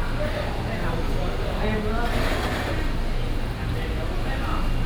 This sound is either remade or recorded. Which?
recorded